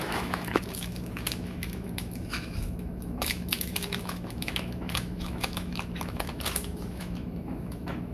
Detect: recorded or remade remade